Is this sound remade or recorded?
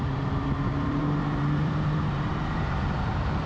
remade